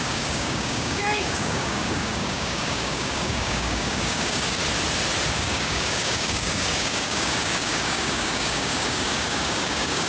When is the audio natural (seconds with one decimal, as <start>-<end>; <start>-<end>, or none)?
4.6-5.3